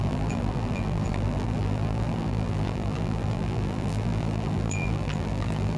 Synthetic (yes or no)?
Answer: yes